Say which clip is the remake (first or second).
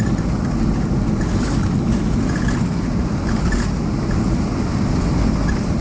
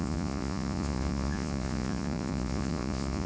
second